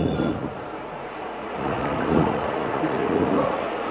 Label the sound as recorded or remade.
remade